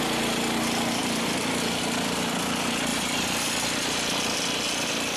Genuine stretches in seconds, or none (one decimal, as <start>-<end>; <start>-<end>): 0.0-1.0; 1.8-2.9; 4.2-5.2